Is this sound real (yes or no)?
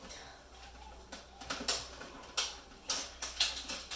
yes